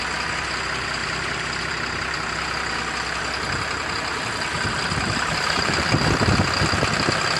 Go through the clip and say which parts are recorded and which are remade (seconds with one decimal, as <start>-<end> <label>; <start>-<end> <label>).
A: 0.0-1.0 recorded; 1.0-1.7 remade; 1.7-4.5 recorded; 4.5-5.7 remade; 5.7-7.4 recorded

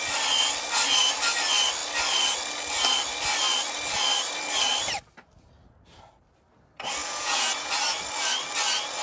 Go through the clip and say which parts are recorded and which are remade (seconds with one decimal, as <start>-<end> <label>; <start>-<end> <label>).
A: 0.0-7.0 recorded; 7.0-7.7 remade; 7.7-9.0 recorded

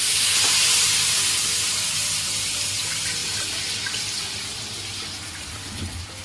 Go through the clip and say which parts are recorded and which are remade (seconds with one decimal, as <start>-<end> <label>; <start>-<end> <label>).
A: 0.0-6.2 recorded

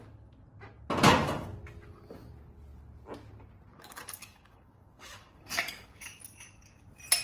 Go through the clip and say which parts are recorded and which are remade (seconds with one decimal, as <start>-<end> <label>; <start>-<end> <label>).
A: 0.0-3.7 recorded; 3.7-6.8 remade; 6.8-7.2 recorded